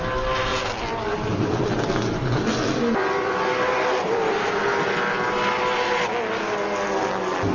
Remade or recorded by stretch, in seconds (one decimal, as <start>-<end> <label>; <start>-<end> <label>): 0.0-7.5 recorded